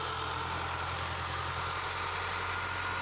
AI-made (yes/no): no